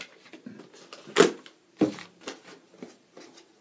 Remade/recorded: recorded